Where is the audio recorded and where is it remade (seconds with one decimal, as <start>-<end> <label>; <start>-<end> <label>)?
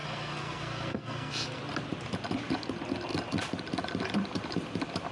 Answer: 0.0-1.6 remade; 1.6-5.1 recorded